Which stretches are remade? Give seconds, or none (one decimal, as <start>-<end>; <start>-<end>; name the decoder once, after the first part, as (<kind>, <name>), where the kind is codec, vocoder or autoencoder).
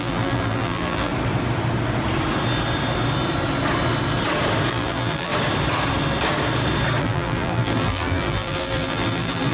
0.0-1.1 (vocoder, BigVGAN v2); 4.7-5.3; 7.0-9.5